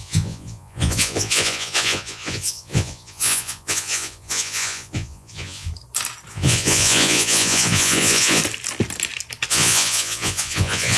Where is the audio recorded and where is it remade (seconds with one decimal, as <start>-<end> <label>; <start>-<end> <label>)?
0.0-5.7 remade; 5.7-6.3 recorded; 6.3-8.4 remade; 8.4-9.5 recorded; 9.5-11.0 remade